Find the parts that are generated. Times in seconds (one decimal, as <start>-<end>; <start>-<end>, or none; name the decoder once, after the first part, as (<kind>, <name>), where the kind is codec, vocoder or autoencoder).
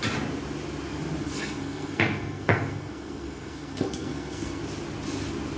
1.2-4.6 (codec, SNAC)